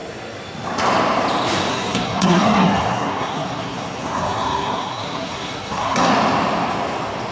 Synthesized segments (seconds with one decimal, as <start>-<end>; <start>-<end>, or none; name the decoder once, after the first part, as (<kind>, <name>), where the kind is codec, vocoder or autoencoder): 1.7-6.1 (codec, SNAC)